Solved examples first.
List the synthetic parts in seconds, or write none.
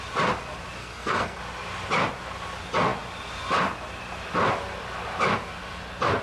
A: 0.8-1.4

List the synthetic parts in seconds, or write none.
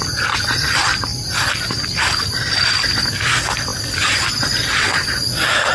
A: none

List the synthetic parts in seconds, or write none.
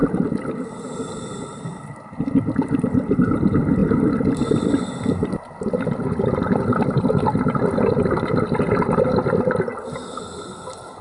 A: none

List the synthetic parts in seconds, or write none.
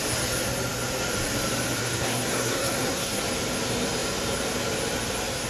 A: 1.8-3.2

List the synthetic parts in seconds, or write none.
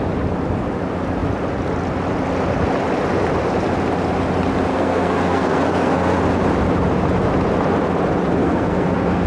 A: 4.7-6.2; 8.4-9.3